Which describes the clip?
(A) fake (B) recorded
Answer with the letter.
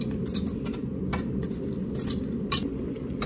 B